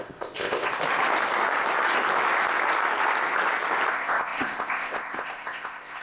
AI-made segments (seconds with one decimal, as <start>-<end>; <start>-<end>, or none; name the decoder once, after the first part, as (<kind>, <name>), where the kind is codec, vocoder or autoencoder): 0.0-0.7 (codec, ZipCodec); 3.9-6.0